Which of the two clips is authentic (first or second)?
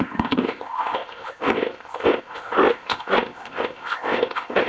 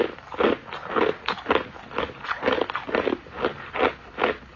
second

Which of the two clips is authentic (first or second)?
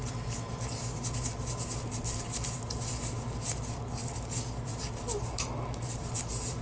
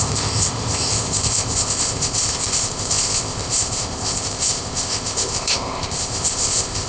first